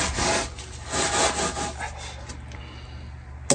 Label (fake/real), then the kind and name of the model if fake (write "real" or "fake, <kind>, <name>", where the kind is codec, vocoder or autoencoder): real